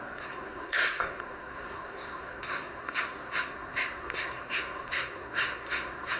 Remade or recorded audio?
remade